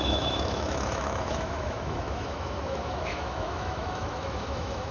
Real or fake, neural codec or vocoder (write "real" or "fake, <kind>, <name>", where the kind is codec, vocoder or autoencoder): fake, autoencoder, DAC-VAE